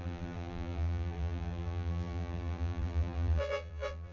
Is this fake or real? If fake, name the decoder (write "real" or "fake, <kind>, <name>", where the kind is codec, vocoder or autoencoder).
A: fake, vocoder, BigVGAN v2